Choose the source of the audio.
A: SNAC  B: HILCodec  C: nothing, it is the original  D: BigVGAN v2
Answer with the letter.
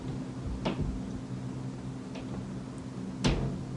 C